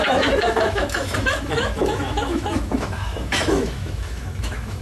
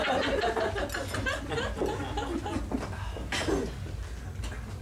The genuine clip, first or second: second